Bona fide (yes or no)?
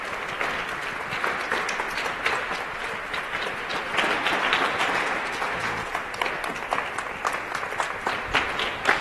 yes